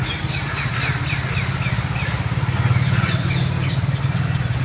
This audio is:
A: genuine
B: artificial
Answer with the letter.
A